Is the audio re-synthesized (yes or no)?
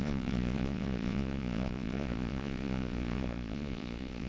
yes